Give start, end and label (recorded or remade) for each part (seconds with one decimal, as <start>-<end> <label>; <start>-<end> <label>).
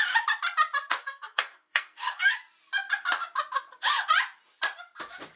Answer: 0.0-1.0 recorded; 1.0-2.4 remade; 2.4-5.4 recorded